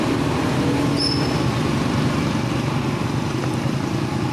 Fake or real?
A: real